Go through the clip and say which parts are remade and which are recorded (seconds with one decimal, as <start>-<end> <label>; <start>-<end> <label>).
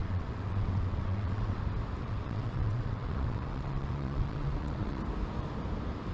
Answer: 0.0-1.6 remade; 1.6-2.0 recorded; 2.0-5.0 remade; 5.0-6.1 recorded